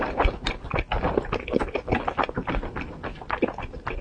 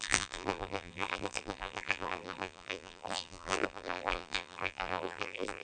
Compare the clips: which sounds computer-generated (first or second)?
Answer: second